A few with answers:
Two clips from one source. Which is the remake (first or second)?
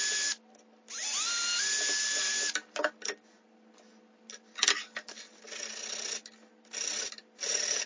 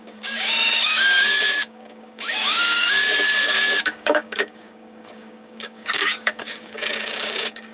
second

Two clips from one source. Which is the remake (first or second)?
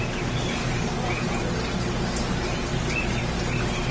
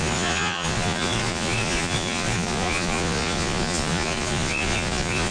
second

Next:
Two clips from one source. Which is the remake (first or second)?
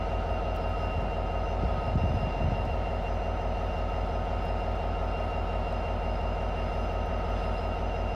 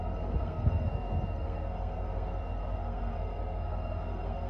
second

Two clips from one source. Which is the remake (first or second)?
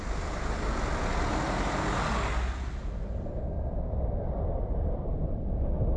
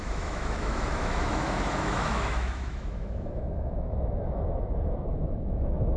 second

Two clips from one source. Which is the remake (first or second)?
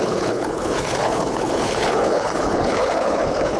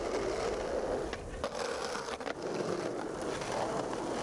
first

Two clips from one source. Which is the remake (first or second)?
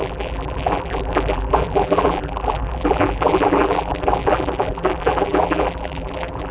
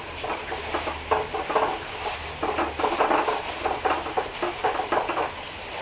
first